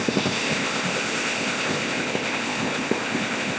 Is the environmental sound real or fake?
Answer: fake